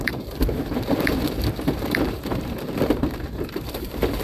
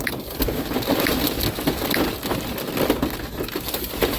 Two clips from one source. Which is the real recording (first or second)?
second